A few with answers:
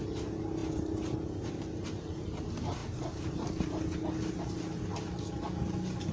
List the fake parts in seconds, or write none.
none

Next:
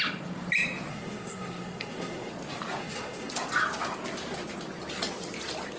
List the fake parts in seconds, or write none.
0.9-2.3 (codec, SNAC); 2.8-3.3

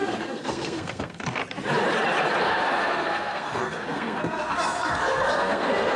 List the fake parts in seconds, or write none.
0.0-1.4 (codec, SNAC); 2.4-6.0

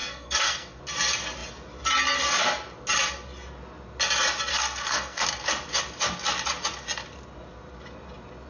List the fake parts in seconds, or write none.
0.0-0.8 (codec, SNAC); 4.5-5.2

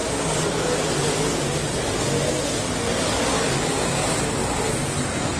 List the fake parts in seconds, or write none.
none

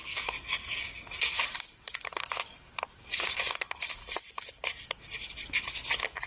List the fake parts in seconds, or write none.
0.0-1.4 (codec, SNAC)

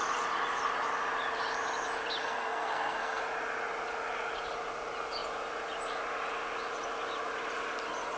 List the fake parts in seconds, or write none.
2.2-3.2 (codec, SNAC)

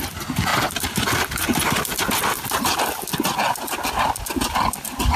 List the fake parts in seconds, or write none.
none